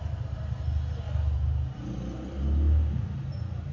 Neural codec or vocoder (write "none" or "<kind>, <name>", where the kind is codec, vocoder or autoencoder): none